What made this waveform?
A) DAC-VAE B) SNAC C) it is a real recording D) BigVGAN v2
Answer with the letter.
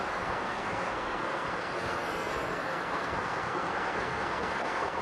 B